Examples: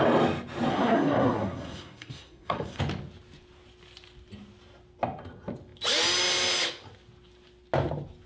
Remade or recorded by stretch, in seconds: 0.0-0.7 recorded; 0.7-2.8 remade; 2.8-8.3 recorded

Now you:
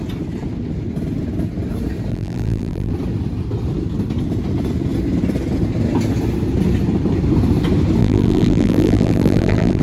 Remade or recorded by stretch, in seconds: 0.0-2.1 recorded; 2.1-2.9 remade; 2.9-8.0 recorded; 8.0-9.8 remade

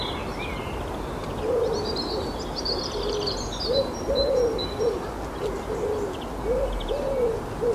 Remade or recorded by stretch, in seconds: 0.0-1.2 recorded; 1.2-5.8 remade; 5.8-7.7 recorded

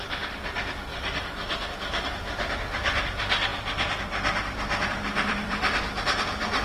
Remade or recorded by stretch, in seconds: 0.0-0.9 remade; 0.9-1.8 recorded; 1.8-6.6 remade